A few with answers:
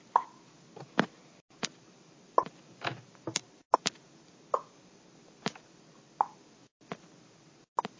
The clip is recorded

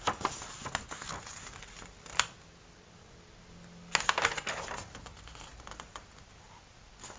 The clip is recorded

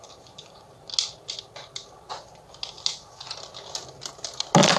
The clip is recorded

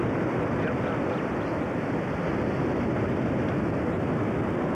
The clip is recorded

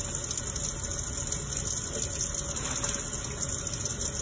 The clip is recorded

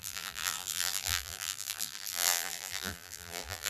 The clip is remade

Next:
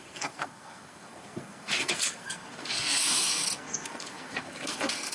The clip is remade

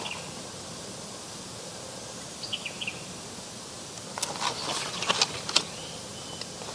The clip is recorded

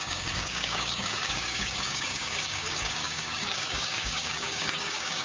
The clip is remade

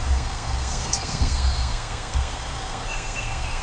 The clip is remade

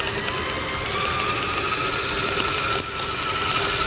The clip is recorded